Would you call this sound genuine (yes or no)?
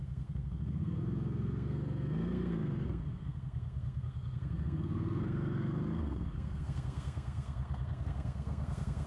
no